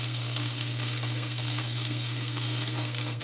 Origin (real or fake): fake